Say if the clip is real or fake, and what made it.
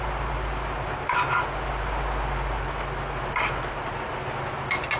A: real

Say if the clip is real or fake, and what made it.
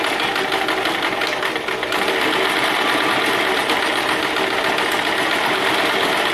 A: real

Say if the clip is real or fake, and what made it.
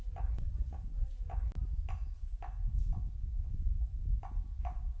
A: real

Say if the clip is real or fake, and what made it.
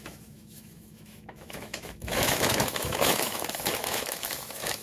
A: fake, autoencoder, DAC-VAE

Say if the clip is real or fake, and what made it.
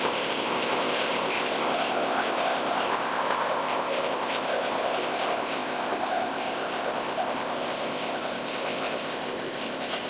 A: fake, codec, ZipCodec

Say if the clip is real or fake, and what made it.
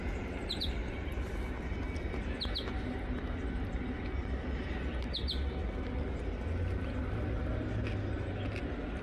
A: real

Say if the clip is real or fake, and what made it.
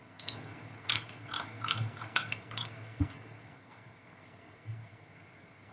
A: fake, codec, SNAC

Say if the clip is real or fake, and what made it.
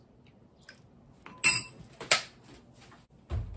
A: real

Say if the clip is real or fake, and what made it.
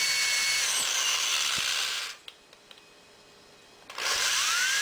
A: real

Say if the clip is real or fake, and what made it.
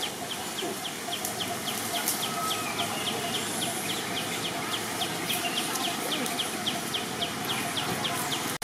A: real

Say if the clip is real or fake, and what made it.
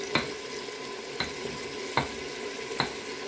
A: real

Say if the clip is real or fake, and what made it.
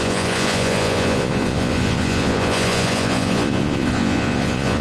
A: fake, vocoder, Vocos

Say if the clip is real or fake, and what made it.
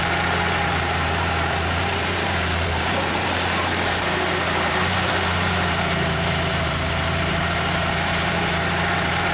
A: fake, vocoder, BigVGAN v2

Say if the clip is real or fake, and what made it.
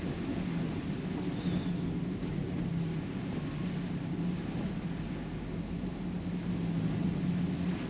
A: real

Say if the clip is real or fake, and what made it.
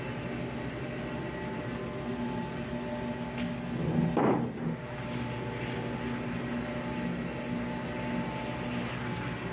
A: real